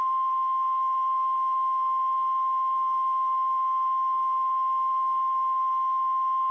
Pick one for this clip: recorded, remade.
recorded